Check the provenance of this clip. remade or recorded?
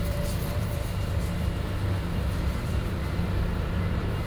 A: remade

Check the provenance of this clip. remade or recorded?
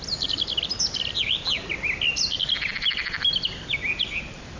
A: recorded